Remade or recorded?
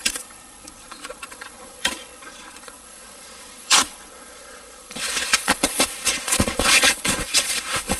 remade